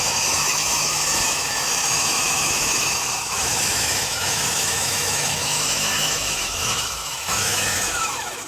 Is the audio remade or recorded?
remade